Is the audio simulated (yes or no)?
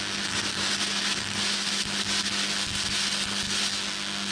no